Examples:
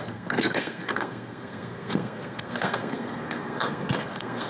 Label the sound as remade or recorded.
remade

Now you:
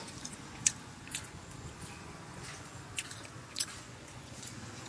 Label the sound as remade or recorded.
remade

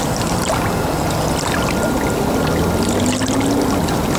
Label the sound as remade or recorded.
recorded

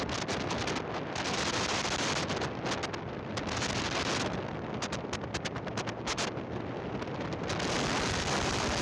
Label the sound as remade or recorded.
recorded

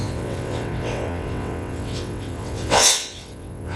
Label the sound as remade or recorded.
remade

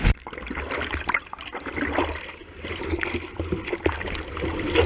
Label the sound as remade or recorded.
recorded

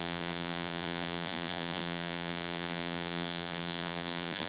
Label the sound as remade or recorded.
remade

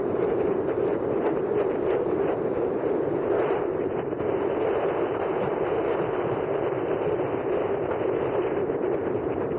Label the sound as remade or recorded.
recorded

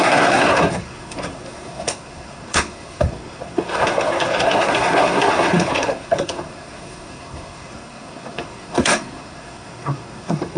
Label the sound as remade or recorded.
remade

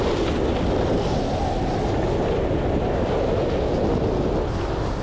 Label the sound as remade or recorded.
recorded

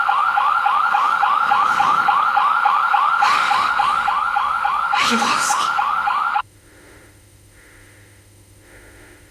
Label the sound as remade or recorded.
remade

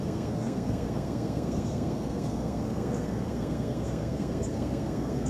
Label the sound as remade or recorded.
remade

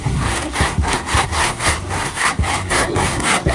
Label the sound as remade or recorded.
remade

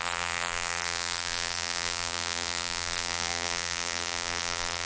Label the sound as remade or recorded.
remade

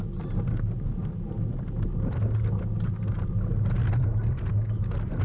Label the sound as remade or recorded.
recorded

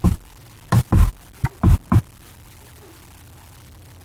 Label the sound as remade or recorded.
recorded